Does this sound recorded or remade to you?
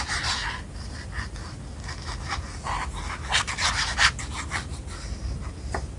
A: recorded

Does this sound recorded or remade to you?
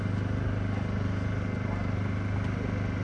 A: recorded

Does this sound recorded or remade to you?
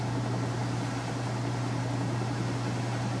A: recorded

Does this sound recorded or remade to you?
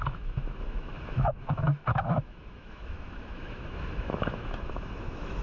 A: remade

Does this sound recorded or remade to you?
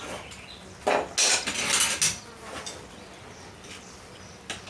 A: recorded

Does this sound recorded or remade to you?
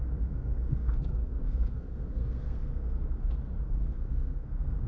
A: remade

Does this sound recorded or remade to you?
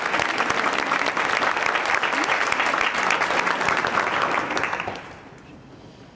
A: recorded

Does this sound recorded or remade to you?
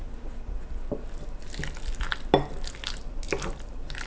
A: recorded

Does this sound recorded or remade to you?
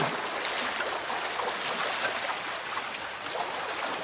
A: recorded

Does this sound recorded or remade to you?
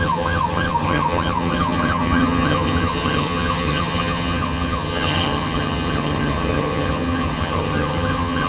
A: remade